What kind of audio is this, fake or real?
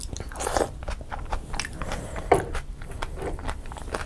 real